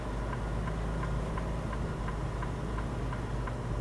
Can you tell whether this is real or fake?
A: real